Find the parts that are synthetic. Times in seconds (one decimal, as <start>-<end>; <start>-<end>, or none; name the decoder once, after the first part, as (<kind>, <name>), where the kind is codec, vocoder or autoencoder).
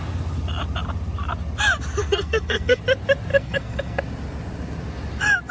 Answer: 2.0-2.8 (codec, SNAC); 3.3-4.0